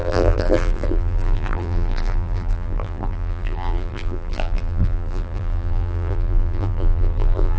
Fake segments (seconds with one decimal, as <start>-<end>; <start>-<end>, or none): 0.0-7.6